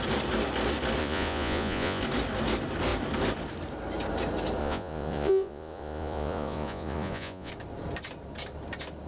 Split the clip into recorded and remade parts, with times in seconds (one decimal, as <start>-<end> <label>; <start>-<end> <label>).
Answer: 0.0-1.0 recorded; 1.0-2.0 remade; 2.0-4.6 recorded; 4.6-7.5 remade; 7.5-9.1 recorded